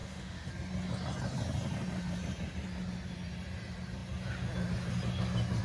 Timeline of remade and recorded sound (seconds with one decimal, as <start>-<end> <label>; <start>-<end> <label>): 0.0-0.5 remade; 0.5-5.6 recorded